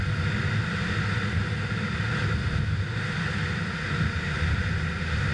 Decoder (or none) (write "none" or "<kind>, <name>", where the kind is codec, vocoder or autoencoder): none